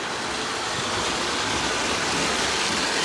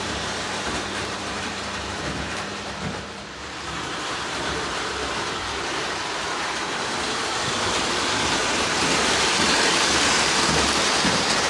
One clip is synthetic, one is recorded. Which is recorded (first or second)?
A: first